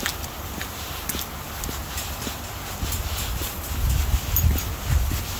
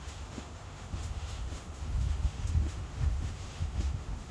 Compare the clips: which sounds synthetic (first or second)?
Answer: second